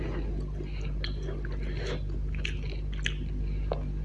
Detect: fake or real real